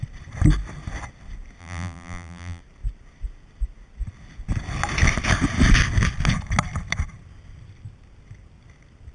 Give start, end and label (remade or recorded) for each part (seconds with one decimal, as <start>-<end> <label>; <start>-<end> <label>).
0.0-1.6 recorded; 1.6-2.6 remade; 2.6-9.1 recorded

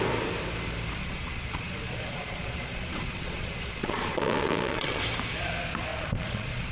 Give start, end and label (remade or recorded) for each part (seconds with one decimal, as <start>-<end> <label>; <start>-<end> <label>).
0.0-1.0 recorded; 1.0-5.0 remade; 5.0-5.9 recorded; 5.9-6.7 remade

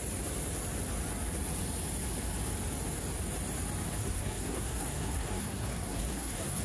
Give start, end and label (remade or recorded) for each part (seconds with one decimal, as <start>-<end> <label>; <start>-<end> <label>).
0.0-4.0 recorded; 4.0-6.6 remade

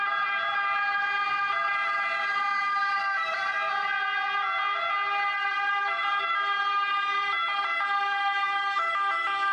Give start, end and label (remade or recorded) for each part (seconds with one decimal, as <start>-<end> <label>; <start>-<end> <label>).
0.0-2.3 recorded; 2.3-2.8 remade; 2.8-9.5 recorded